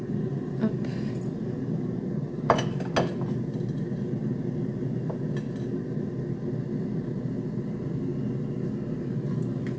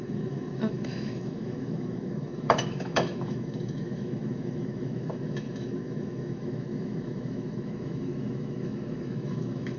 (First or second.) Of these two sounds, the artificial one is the second